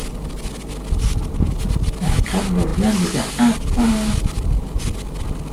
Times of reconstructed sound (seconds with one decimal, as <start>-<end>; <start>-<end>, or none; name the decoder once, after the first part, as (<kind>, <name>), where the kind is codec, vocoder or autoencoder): none